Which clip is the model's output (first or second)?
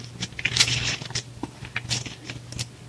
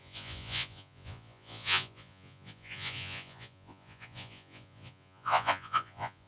second